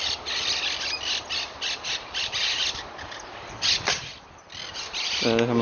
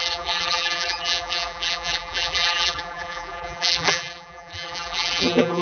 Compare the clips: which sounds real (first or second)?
first